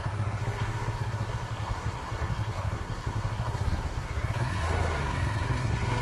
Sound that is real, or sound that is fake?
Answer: fake